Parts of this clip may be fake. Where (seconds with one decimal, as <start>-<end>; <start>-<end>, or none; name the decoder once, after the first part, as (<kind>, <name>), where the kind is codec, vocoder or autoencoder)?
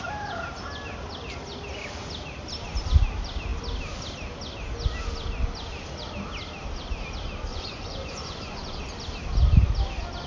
7.5-8.8 (vocoder, Vocos)